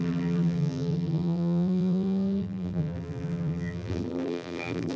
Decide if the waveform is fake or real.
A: fake